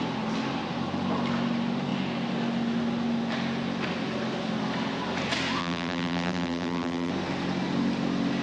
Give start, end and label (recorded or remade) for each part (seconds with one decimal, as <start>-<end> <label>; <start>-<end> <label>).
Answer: 0.0-5.6 recorded; 5.6-7.1 remade; 7.1-8.4 recorded